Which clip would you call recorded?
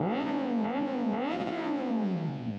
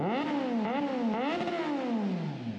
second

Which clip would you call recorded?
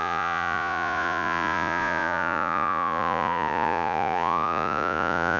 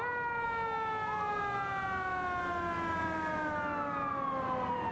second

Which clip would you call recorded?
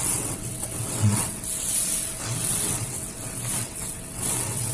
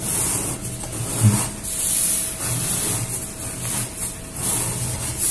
second